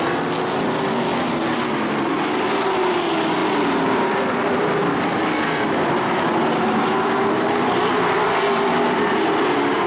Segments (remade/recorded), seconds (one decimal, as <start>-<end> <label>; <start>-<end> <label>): 0.0-3.4 recorded; 3.4-8.1 remade; 8.1-9.9 recorded